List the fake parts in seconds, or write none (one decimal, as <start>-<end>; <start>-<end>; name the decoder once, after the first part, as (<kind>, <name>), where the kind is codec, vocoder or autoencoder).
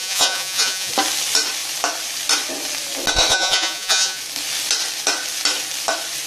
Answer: 0.0-0.9 (vocoder, Vocos); 3.3-4.2